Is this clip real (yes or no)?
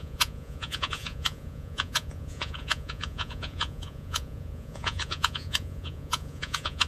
no